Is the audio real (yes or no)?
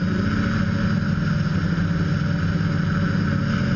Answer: yes